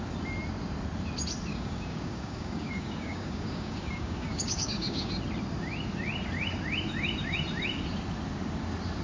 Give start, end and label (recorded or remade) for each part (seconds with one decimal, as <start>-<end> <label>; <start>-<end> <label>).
0.0-1.5 recorded; 1.5-5.1 remade; 5.1-9.0 recorded